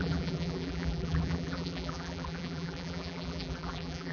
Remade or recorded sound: remade